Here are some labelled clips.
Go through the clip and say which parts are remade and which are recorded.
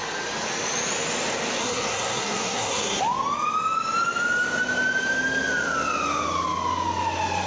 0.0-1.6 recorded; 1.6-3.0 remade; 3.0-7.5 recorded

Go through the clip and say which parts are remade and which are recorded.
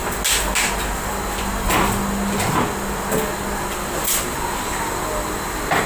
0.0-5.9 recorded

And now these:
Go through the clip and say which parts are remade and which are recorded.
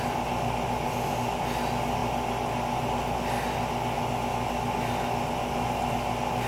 0.0-6.5 recorded